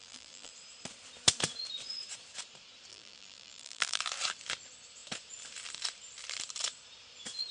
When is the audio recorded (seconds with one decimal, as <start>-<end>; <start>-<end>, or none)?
0.5-2.9; 4.0-7.5